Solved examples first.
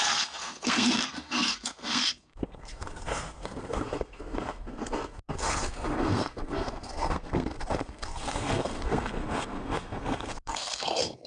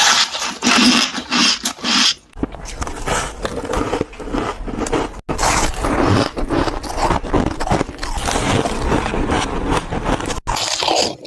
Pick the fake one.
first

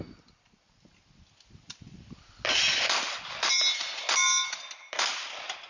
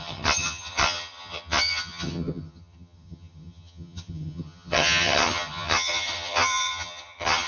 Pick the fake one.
second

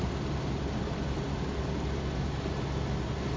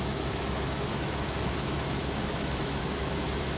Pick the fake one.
second